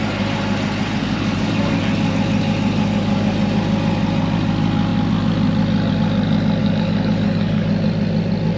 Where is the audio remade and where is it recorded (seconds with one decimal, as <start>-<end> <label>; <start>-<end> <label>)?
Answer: 0.0-1.0 recorded; 1.0-1.8 remade; 1.8-6.6 recorded; 6.6-7.7 remade; 7.7-8.6 recorded